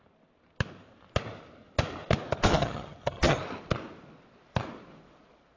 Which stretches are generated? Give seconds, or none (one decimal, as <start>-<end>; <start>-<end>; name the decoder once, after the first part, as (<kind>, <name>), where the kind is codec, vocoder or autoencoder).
2.5-3.4 (vocoder, HiFi-GAN)